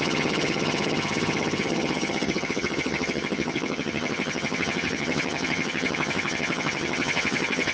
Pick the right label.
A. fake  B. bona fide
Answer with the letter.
A